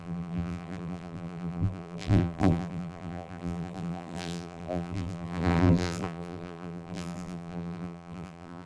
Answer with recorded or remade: remade